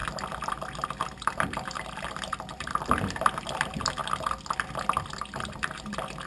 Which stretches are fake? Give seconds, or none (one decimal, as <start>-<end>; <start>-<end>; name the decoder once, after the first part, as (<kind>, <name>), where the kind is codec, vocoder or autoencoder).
1.0-4.0 (vocoder, BigVGAN v2); 5.3-6.3